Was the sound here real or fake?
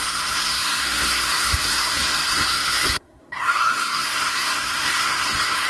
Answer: fake